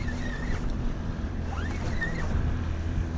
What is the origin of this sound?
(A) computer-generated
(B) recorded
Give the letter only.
B